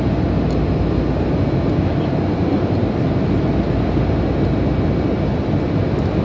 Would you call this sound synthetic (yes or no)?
no